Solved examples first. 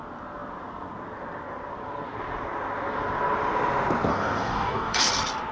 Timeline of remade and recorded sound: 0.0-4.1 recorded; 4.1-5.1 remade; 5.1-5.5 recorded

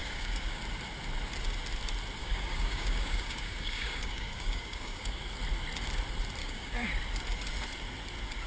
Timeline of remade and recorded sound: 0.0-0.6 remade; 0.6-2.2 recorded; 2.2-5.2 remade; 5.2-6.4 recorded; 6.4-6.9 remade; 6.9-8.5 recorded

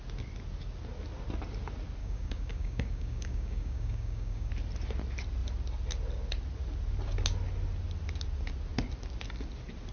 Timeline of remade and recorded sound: 0.0-2.0 recorded; 2.0-4.5 remade; 4.5-9.9 recorded